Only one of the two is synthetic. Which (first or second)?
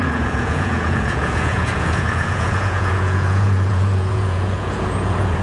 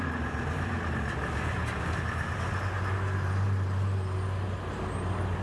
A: first